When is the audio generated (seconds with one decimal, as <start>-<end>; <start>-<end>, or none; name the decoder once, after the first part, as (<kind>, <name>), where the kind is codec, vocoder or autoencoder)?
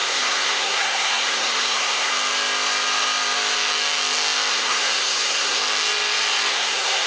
0.0-2.1 (codec, SNAC); 4.5-5.6; 6.5-7.1